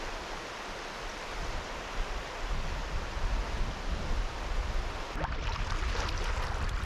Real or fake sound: real